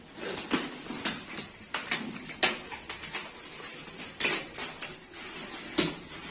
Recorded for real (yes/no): yes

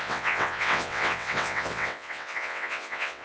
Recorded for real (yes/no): no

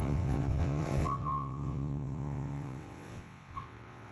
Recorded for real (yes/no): no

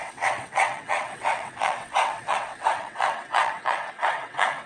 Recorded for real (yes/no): no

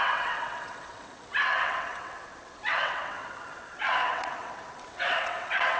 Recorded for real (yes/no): no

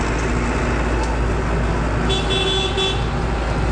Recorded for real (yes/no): yes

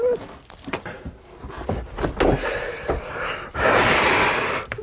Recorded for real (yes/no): yes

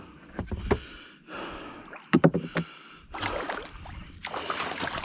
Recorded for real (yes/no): yes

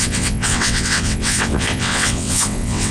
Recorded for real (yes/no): no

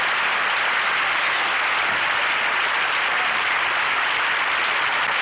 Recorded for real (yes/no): yes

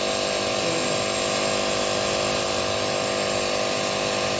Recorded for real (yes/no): yes